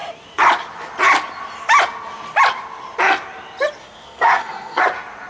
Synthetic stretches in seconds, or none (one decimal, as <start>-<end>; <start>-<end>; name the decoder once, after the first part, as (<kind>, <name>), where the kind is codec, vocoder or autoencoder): 3.8-4.8 (codec, SNAC)